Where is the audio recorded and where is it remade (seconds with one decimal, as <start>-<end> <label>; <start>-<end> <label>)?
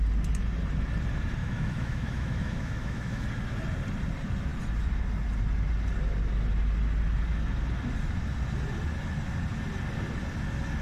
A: 0.0-1.4 recorded; 1.4-3.2 remade; 3.2-10.8 recorded